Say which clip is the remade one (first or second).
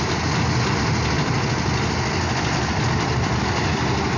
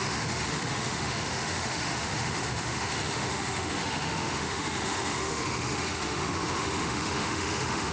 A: second